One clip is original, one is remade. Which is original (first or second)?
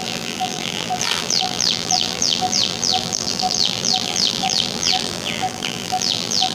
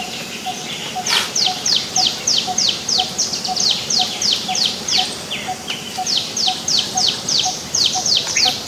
second